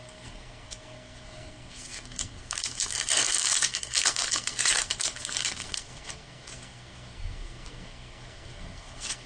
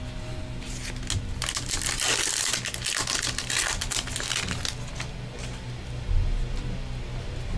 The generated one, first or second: first